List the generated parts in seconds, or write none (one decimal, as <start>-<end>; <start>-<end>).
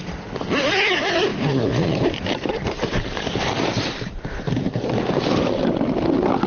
1.3-4.8